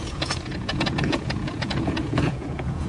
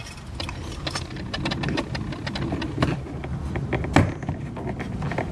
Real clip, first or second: second